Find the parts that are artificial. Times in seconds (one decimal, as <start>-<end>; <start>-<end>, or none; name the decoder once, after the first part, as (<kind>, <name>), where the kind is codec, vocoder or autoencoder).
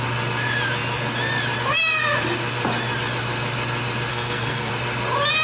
4.1-4.7 (codec, SNAC)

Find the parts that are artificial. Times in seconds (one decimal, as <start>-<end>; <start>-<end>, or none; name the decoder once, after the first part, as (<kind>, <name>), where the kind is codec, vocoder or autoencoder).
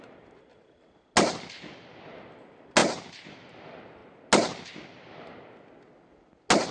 none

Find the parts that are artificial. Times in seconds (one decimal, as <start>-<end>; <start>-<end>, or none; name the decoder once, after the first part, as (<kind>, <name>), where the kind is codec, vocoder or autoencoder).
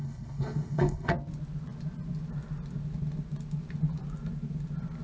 0.0-1.1 (codec, HILCodec)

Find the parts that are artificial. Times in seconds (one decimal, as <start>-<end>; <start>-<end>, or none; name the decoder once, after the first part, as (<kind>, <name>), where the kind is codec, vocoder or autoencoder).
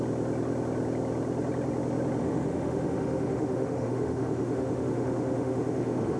2.2-6.2 (autoencoder, DAC-VAE)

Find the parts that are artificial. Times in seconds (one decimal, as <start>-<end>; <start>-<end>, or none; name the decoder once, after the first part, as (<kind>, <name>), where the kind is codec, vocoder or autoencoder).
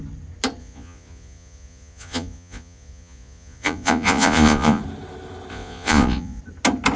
0.6-4.8 (vocoder, Vocos); 5.5-6.4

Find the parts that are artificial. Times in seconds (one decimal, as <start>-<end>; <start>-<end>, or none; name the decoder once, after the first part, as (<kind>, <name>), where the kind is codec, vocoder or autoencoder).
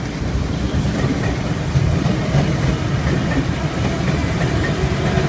0.0-2.5 (vocoder, BigVGAN v2); 3.7-5.3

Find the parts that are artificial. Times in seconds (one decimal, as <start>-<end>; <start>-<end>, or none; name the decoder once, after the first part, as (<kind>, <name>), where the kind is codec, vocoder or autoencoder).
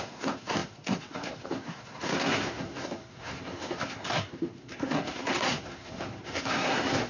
0.0-7.1 (codec, SNAC)